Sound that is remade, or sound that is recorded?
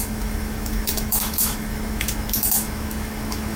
remade